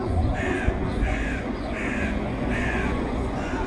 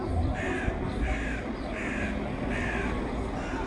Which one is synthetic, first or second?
first